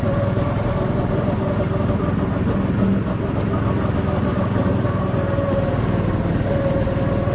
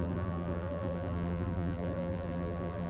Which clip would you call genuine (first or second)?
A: first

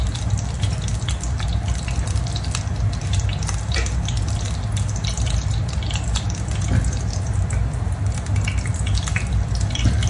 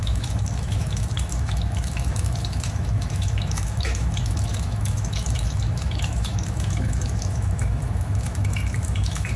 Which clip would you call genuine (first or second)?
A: first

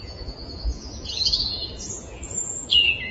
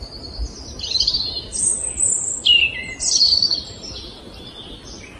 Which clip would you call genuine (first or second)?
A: second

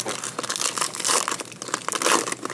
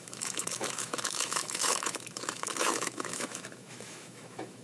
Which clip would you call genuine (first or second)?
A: first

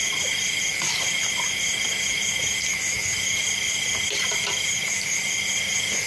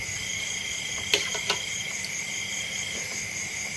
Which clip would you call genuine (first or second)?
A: first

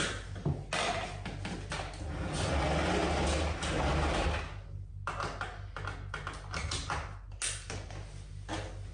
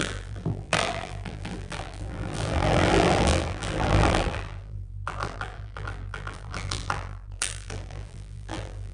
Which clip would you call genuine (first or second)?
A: first